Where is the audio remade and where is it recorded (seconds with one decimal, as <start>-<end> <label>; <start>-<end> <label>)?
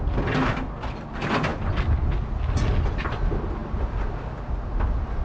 0.0-5.2 recorded